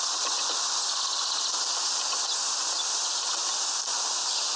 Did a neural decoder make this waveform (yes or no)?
no